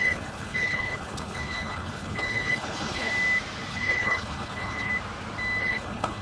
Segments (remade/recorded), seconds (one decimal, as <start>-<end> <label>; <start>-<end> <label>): 0.0-3.1 remade; 3.1-3.7 recorded; 3.7-4.9 remade; 4.9-5.6 recorded; 5.6-6.2 remade